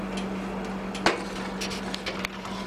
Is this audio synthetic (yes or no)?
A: no